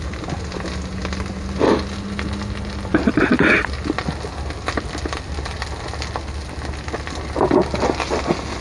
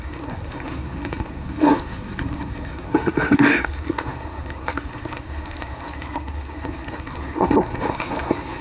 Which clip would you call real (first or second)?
first